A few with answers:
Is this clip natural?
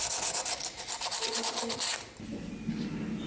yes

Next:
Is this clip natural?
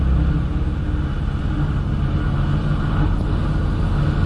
yes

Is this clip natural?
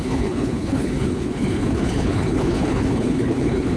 no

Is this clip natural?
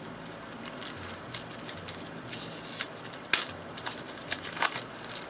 yes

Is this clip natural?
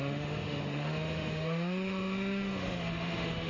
no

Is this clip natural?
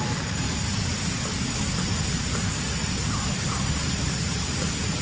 yes